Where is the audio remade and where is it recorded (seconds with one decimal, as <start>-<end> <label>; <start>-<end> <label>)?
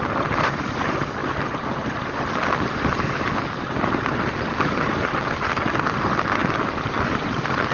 0.0-1.2 remade; 1.2-5.8 recorded; 5.8-6.4 remade; 6.4-7.1 recorded; 7.1-7.7 remade